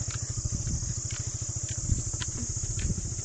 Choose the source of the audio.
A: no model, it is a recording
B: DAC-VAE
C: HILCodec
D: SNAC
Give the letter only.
A